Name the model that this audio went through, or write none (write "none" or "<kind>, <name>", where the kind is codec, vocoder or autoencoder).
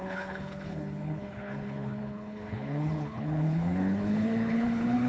codec, HILCodec